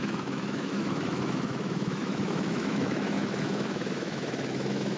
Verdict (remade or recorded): remade